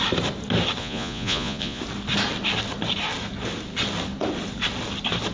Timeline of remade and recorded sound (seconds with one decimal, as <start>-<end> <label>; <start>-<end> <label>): 0.0-0.8 recorded; 0.8-1.8 remade; 1.8-5.3 recorded